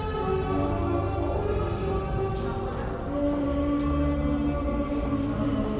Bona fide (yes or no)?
yes